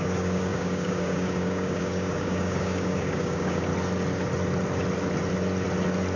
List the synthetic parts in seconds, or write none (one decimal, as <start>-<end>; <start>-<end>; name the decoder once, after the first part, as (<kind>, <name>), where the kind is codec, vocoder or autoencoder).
0.0-3.7 (codec, DAC)